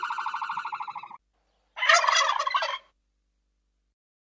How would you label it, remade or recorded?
recorded